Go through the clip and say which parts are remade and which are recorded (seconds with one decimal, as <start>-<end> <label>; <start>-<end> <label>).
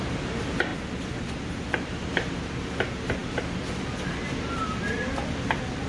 0.0-5.9 recorded